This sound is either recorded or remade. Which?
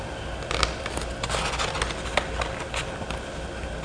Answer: recorded